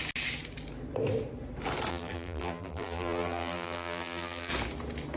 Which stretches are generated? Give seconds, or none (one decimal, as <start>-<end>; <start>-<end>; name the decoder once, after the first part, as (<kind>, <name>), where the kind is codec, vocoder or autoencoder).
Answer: 1.9-4.5 (vocoder, BigVGAN v2)